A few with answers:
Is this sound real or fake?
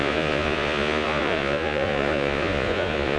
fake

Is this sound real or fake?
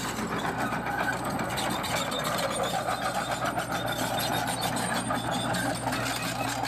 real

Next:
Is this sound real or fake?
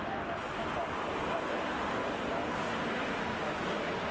real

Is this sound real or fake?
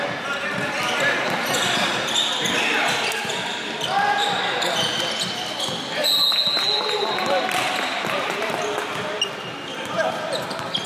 real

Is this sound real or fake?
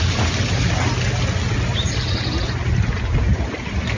real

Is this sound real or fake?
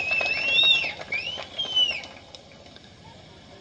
real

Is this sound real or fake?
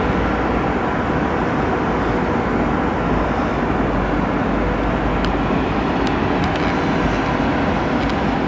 real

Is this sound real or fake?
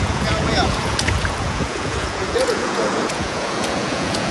fake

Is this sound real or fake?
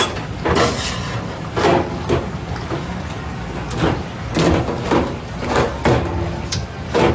real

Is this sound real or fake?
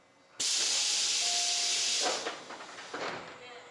real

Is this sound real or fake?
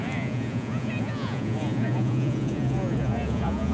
fake